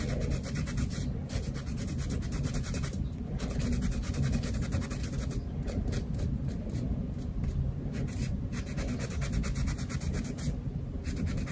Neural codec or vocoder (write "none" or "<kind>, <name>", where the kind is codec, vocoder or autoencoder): vocoder, BigVGAN v2